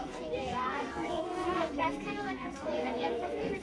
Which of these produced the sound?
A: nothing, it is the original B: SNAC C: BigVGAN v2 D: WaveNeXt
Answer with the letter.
B